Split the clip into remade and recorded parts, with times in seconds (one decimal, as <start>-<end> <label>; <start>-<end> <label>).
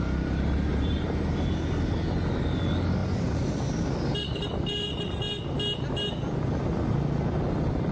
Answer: 0.0-0.7 recorded; 0.7-1.3 remade; 1.3-7.9 recorded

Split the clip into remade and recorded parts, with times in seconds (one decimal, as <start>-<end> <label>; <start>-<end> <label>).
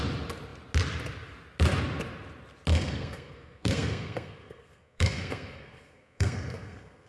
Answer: 0.0-2.7 recorded; 2.7-7.1 remade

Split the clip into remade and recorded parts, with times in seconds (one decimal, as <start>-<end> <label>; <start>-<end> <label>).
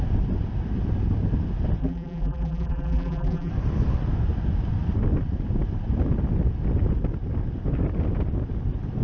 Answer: 0.0-1.8 recorded; 1.8-3.5 remade; 3.5-9.0 recorded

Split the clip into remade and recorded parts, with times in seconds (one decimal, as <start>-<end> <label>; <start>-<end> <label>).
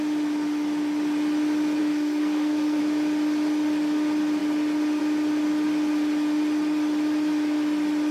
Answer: 0.0-1.8 recorded; 1.8-2.8 remade; 2.8-8.1 recorded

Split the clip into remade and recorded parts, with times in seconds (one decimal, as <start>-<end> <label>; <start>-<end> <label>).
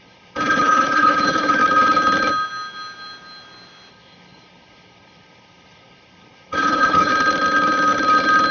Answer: 0.0-1.6 remade; 1.6-3.9 recorded; 3.9-7.1 remade; 7.1-8.5 recorded